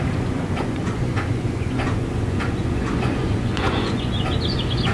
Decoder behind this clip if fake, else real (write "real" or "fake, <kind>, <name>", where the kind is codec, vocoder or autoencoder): fake, vocoder, Vocos